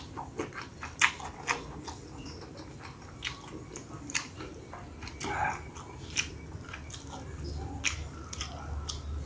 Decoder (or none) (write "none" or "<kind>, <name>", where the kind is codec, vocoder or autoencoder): none